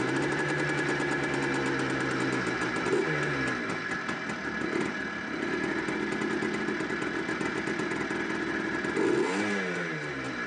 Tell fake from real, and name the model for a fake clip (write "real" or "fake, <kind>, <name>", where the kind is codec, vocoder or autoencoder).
real